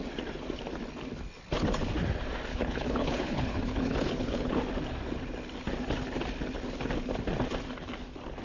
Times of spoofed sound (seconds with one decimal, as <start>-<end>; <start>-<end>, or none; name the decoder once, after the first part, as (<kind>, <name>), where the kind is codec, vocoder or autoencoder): 2.5-4.6 (codec, HILCodec)